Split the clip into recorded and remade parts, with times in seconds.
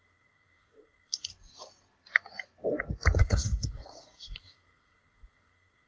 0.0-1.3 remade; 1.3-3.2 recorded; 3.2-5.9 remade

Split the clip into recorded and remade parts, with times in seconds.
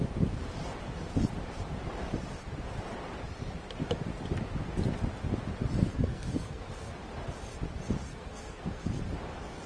0.0-5.9 recorded; 5.9-6.9 remade; 6.9-8.1 recorded; 8.1-8.8 remade; 8.8-9.7 recorded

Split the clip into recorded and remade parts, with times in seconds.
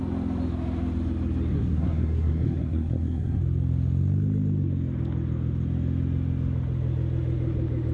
0.0-1.5 recorded; 1.5-3.4 remade; 3.4-7.9 recorded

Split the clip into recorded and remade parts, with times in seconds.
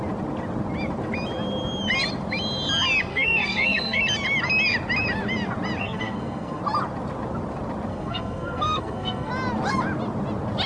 0.0-3.1 recorded; 3.1-4.0 remade; 4.0-5.8 recorded; 5.8-6.6 remade; 6.6-7.9 recorded; 7.9-9.3 remade; 9.3-10.7 recorded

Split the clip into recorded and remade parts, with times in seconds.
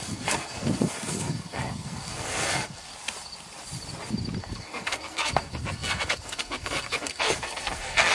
0.0-2.9 remade; 2.9-4.4 recorded; 4.4-8.1 remade